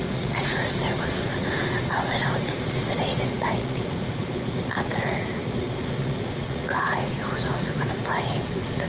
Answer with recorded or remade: remade